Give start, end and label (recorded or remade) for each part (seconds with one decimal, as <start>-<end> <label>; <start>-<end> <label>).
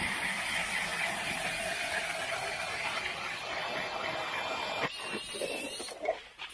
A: 0.0-6.5 recorded